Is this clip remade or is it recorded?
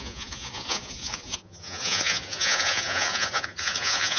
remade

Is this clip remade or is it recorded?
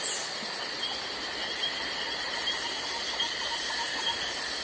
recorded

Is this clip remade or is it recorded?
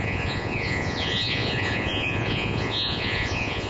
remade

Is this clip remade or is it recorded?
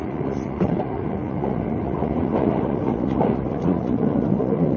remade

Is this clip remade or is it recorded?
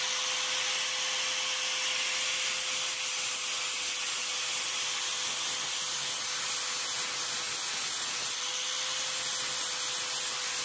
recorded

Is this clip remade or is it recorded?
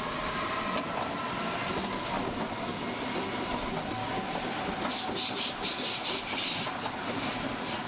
recorded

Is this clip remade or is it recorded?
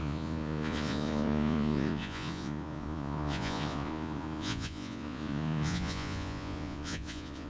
remade